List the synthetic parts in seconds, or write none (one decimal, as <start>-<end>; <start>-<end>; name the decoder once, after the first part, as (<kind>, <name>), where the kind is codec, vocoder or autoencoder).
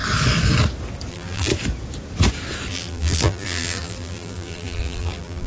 1.1-1.5 (vocoder, BigVGAN v2); 2.7-5.5